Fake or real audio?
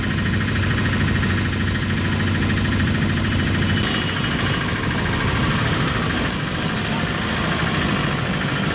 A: real